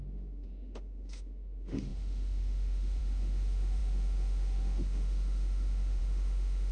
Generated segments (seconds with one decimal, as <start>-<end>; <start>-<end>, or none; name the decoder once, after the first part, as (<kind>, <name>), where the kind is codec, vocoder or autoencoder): 0.0-6.7 (autoencoder, DAC-VAE)